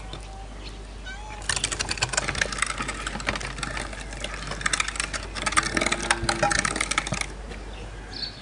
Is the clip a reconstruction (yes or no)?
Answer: no